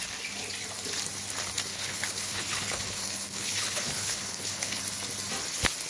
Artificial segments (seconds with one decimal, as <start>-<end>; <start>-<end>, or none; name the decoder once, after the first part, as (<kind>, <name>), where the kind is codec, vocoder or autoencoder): 1.7-4.8 (codec, HILCodec)